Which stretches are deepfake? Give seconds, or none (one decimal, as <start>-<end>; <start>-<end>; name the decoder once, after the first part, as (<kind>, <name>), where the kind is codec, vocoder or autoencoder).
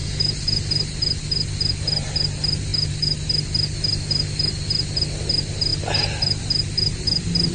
none